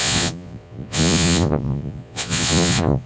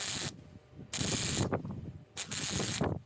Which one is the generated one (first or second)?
first